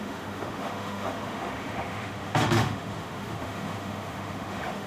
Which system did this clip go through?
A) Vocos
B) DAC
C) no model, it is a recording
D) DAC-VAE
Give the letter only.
D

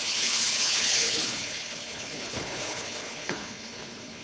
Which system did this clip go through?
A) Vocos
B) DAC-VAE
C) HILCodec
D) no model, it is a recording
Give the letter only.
C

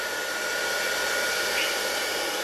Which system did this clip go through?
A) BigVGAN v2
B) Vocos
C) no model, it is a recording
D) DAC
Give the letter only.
C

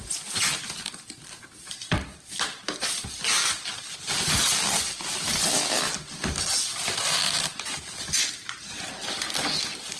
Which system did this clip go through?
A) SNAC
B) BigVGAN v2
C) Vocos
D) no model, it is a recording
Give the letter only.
D